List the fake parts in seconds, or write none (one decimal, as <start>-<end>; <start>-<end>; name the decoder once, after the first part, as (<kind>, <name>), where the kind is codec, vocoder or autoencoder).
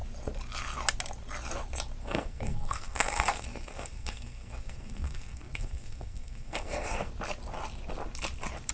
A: 2.0-7.1 (codec, SNAC)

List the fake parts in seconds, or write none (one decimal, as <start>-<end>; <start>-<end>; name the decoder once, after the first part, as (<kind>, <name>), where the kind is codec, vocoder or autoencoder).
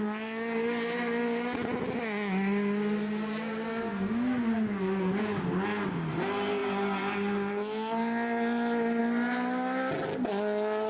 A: none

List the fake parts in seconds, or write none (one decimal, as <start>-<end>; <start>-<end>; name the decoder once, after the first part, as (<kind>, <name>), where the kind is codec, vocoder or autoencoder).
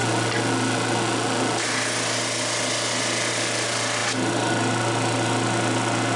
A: none